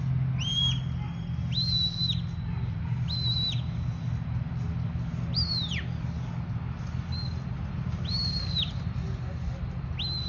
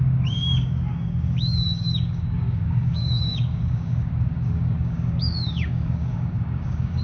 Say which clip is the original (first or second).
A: first